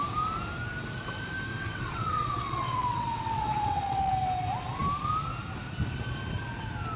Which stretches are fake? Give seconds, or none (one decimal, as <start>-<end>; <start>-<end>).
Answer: 1.5-4.1